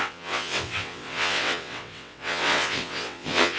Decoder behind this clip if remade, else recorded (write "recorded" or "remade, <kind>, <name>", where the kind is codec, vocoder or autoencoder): remade, vocoder, WaveNeXt